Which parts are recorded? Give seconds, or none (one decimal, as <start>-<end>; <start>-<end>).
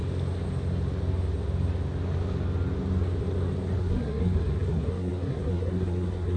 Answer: 0.0-3.8